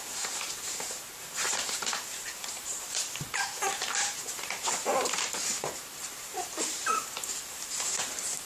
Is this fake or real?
fake